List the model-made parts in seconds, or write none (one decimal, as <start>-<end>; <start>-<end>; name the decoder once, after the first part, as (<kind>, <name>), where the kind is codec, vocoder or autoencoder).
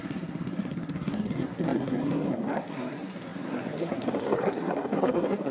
0.0-5.5 (codec, SNAC)